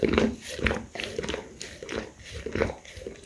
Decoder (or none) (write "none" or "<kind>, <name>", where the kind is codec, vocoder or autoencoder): none